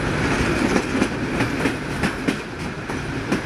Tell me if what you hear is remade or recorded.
recorded